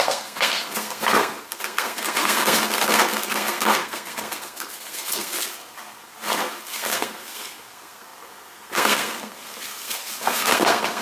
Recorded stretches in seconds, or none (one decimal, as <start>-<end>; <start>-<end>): none